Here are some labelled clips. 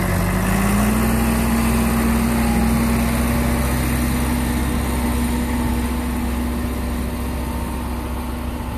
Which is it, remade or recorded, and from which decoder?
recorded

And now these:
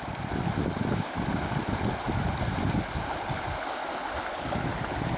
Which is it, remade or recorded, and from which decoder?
recorded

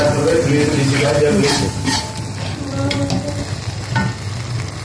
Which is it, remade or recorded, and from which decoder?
recorded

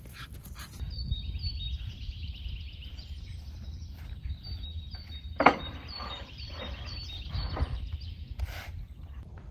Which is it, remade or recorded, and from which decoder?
remade, vocoder, BigVGAN v2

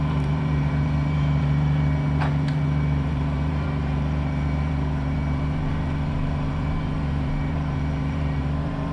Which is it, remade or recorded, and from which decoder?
remade, vocoder, BigVGAN v2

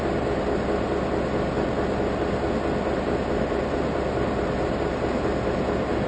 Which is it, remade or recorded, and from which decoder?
recorded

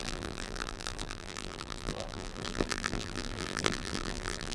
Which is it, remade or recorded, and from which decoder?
remade, vocoder, BigVGAN v2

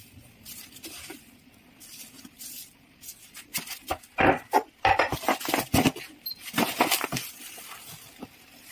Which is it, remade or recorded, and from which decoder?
recorded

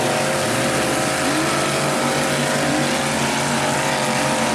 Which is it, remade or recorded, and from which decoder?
recorded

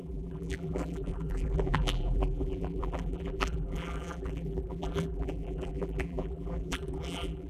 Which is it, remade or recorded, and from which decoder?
remade, vocoder, BigVGAN v2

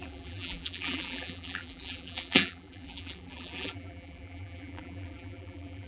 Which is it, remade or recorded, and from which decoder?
remade, vocoder, BigVGAN v2